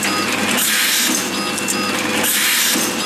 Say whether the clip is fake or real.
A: real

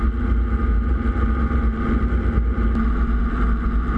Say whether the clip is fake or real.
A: real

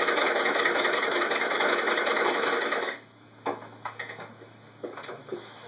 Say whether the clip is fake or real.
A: fake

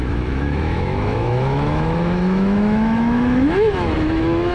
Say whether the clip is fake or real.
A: fake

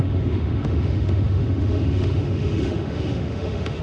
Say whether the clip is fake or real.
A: fake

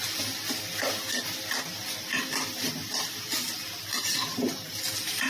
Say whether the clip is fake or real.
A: real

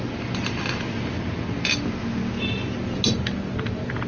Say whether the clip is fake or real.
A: real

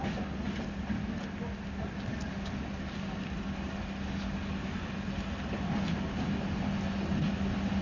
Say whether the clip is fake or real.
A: real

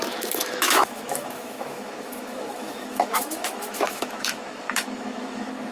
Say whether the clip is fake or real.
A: fake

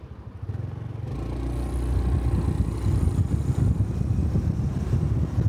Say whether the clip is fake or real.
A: real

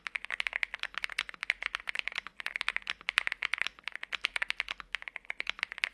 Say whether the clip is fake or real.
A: real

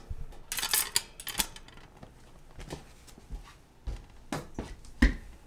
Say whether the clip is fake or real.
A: real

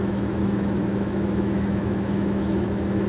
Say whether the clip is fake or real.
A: fake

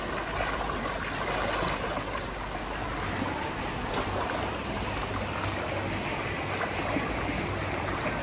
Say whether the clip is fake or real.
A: real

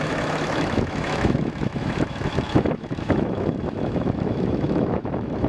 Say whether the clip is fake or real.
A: fake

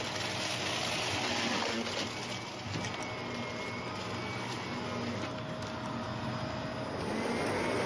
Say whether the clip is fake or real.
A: real